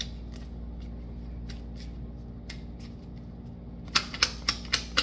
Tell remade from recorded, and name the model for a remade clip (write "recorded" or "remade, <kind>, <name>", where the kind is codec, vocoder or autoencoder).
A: recorded